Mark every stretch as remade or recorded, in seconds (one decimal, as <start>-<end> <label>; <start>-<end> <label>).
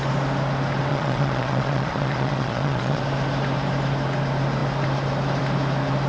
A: 0.0-0.9 recorded; 0.9-3.0 remade; 3.0-6.1 recorded